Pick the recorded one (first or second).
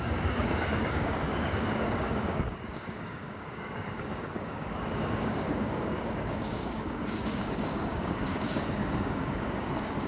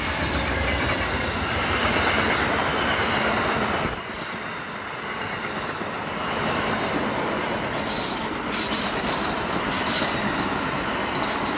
second